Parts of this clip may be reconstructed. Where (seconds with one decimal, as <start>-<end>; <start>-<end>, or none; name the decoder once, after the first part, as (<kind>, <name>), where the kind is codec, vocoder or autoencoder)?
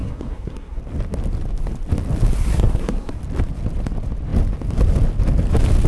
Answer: 0.0-0.8 (codec, SNAC); 2.5-3.2